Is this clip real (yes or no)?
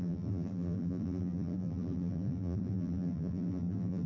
no